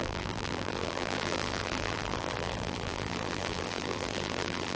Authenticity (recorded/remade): remade